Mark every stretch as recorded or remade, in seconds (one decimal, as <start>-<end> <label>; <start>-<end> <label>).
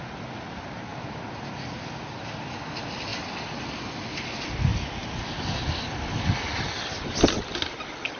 0.0-8.2 recorded